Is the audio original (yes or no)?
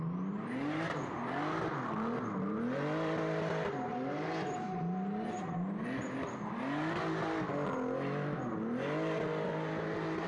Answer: yes